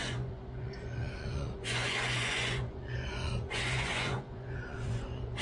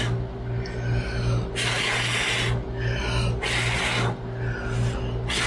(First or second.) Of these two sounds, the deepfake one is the first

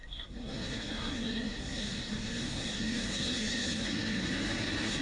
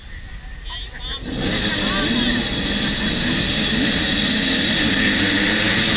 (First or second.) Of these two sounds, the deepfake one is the first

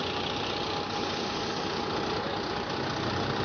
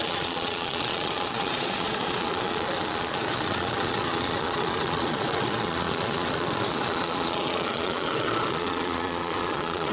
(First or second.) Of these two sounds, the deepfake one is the second